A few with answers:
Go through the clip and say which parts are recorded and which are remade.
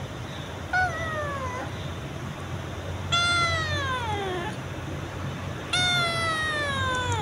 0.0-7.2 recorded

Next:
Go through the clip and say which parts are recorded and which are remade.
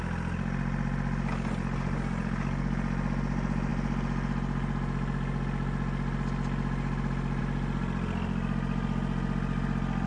0.0-10.1 recorded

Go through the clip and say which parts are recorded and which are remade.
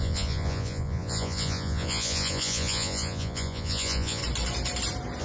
0.0-4.2 remade; 4.2-5.2 recorded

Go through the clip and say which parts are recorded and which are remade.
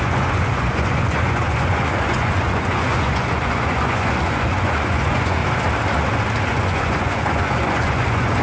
0.0-5.4 remade; 5.4-6.5 recorded; 6.5-8.4 remade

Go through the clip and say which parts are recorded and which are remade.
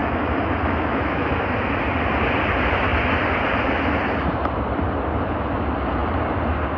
0.0-1.4 remade; 1.4-6.8 recorded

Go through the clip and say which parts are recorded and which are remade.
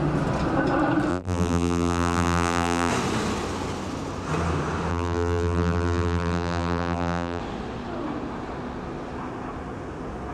0.0-1.1 recorded; 1.1-2.9 remade; 2.9-4.9 recorded; 4.9-7.4 remade; 7.4-10.3 recorded